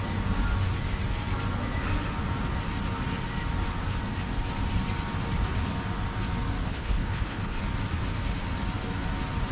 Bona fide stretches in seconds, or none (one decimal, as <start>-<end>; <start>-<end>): 0.0-6.6; 7.6-9.5